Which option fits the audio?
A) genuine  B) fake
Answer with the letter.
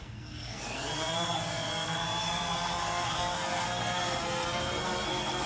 B